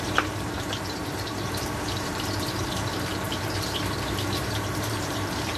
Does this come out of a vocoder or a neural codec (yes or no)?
yes